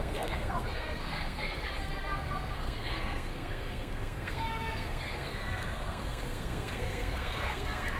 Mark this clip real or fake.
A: fake